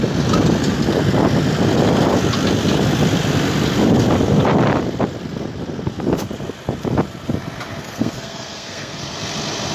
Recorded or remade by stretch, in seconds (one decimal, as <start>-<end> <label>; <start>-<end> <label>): 0.0-7.8 recorded; 7.8-9.0 remade; 9.0-9.7 recorded